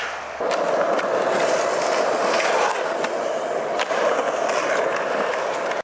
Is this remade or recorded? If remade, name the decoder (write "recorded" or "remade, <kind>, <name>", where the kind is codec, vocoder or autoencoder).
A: recorded